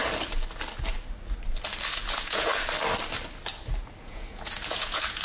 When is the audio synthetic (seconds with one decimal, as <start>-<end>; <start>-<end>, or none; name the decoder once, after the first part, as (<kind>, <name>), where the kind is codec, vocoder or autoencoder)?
1.9-2.5 (vocoder, Vocos); 4.0-5.2